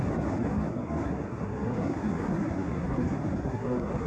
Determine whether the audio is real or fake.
fake